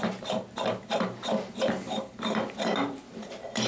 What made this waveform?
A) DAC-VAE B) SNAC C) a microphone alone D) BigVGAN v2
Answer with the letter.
D